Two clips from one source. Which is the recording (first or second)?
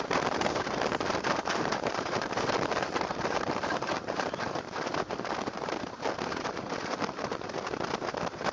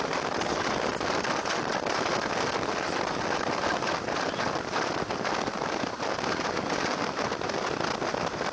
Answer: second